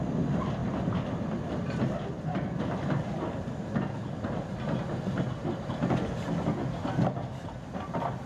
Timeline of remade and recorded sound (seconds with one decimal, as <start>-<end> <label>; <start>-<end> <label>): 0.0-0.6 recorded; 0.6-5.6 remade; 5.6-8.3 recorded

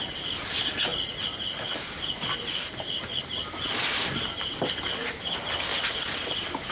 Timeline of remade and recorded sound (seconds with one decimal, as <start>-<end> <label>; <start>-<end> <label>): 0.0-6.7 recorded

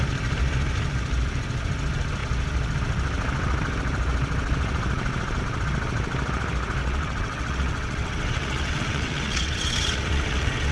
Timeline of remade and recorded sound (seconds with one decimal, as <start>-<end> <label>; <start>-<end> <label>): 0.0-6.8 recorded; 6.8-10.7 remade

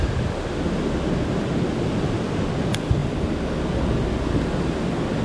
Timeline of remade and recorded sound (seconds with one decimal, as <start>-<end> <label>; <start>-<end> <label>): 0.0-5.2 recorded

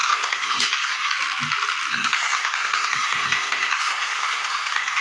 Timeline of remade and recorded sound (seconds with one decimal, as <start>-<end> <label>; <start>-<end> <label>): 0.0-1.1 remade; 1.1-1.9 recorded; 1.9-5.0 remade

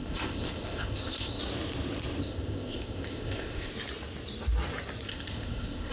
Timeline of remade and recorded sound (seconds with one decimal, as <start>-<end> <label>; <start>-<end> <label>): 0.0-1.4 remade; 1.4-2.2 recorded; 2.2-3.7 remade; 3.7-5.1 recorded; 5.1-5.9 remade